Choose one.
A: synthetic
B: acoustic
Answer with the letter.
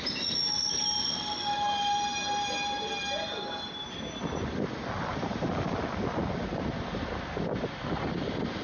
B